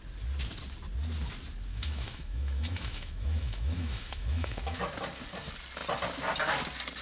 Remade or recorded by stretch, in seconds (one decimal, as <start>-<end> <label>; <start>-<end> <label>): 0.0-1.7 recorded; 1.7-4.8 remade; 4.8-7.0 recorded

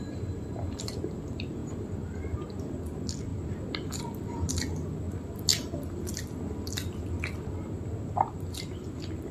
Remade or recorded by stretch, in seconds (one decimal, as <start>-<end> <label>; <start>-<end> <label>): 0.0-9.3 recorded